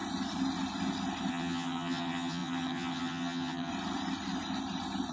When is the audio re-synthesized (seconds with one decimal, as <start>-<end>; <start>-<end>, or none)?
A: 1.3-3.7